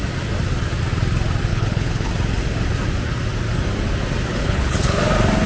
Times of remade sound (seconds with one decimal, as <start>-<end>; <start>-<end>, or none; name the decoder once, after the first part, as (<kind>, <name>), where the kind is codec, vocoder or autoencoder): 1.5-2.1 (codec, HILCodec); 4.3-5.0